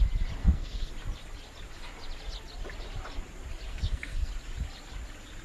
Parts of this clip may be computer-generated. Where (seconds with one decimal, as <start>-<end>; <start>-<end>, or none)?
0.4-0.9; 3.7-4.3

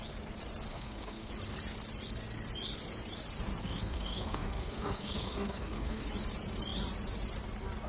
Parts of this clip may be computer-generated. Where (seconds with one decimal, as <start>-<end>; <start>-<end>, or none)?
0.7-1.3; 3.6-6.0

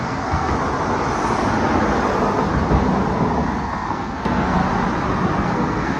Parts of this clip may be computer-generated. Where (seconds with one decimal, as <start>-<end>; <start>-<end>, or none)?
0.0-0.5; 3.6-4.6; 5.4-6.0

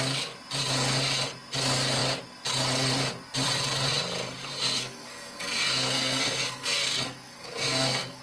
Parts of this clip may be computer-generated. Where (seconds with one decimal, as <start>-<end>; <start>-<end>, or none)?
4.4-8.2

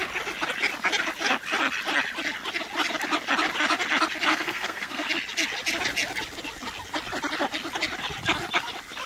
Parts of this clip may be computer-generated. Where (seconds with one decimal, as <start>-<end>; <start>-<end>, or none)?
4.3-5.1

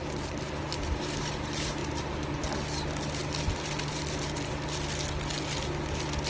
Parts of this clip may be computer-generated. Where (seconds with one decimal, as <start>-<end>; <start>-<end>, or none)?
none